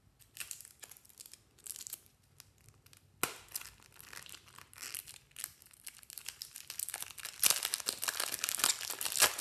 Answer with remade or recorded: recorded